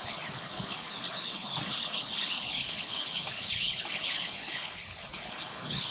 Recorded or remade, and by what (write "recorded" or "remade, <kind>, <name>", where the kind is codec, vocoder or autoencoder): remade, codec, HILCodec